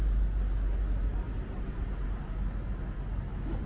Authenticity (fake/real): real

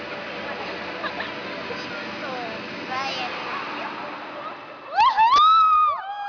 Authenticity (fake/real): real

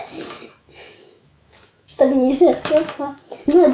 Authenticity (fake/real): fake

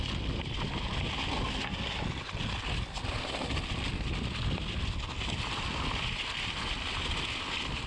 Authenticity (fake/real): real